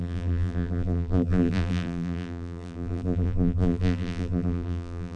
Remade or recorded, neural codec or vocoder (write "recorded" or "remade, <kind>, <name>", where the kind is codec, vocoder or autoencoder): remade, vocoder, BigVGAN v2